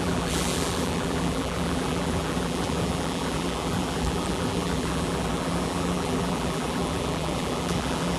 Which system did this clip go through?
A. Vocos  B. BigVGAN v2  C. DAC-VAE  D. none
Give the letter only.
B